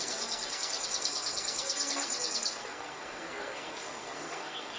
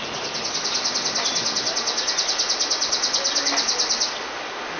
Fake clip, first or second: first